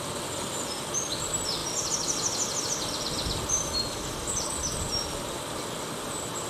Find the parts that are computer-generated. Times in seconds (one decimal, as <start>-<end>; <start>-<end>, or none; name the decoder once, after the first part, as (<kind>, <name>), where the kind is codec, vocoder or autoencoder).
none